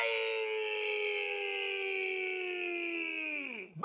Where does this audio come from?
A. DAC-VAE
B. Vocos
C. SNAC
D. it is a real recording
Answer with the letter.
D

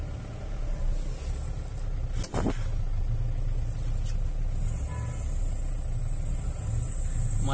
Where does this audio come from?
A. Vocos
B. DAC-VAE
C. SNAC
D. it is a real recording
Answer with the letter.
D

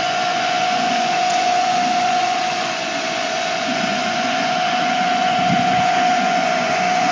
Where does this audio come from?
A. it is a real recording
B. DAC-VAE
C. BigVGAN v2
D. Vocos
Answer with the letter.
D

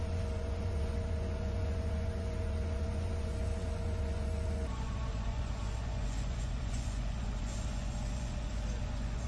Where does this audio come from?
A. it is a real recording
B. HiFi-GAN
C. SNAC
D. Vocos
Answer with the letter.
D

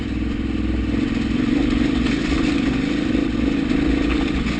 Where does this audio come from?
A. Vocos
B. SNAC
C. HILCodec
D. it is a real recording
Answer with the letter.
D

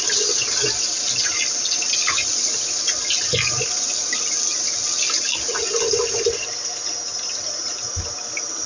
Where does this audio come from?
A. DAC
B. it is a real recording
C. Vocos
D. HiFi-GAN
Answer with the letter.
B